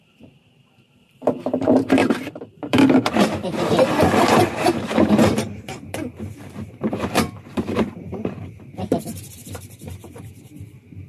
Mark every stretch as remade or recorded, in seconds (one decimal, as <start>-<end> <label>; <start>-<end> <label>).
0.0-11.1 remade